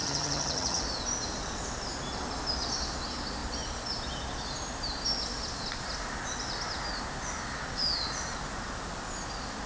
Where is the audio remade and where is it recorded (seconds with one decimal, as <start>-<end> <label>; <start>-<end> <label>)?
0.0-0.8 remade; 0.8-9.7 recorded